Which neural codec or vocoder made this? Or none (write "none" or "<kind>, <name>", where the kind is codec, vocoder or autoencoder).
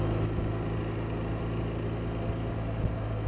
none